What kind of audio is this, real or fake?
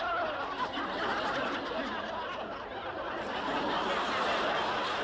real